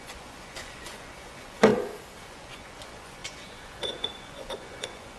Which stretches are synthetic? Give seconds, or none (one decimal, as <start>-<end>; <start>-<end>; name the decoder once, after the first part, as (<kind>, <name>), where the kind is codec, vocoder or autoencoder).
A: 0.0-1.7 (vocoder, Vocos); 2.2-5.2